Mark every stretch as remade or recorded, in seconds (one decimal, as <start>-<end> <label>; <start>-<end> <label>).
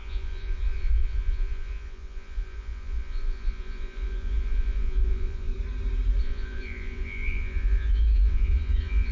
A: 0.0-5.5 remade; 5.5-6.2 recorded; 6.2-9.1 remade